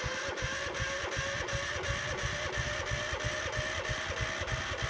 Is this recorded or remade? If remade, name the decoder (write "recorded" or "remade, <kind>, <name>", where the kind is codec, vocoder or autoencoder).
recorded